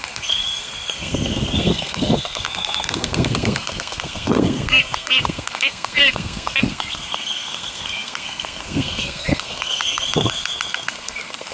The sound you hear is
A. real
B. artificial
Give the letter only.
B